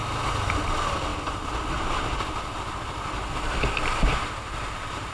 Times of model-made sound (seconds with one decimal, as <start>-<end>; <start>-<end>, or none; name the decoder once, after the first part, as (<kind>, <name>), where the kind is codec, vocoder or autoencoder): none